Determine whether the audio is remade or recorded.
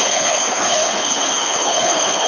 remade